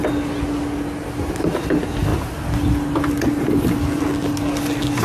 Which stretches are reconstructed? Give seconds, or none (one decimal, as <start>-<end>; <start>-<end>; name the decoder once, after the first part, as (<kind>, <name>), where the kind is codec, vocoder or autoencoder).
none